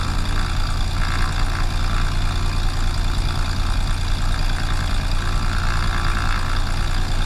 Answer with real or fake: real